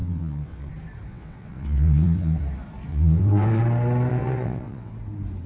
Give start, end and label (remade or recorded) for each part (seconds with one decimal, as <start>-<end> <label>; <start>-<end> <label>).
0.0-0.7 remade; 0.7-1.1 recorded; 1.1-2.4 remade; 2.4-2.9 recorded; 2.9-3.6 remade; 3.6-4.1 recorded; 4.1-4.9 remade; 4.9-5.5 recorded